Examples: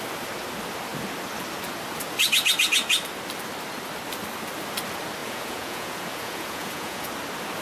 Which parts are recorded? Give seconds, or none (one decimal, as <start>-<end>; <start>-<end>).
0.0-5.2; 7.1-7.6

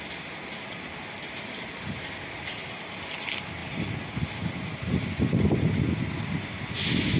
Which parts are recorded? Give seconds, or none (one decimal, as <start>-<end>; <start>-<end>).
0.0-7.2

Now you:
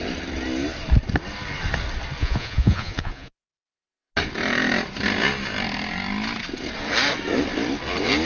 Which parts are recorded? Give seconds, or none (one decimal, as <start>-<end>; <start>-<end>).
0.0-2.2; 4.1-8.3

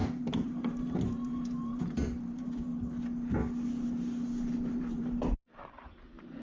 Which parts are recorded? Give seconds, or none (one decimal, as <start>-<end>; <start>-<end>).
2.7-4.5